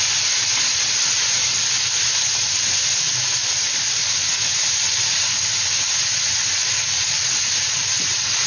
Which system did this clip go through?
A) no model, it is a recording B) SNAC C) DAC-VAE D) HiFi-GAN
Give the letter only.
A